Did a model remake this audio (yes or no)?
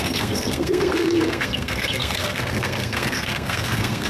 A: yes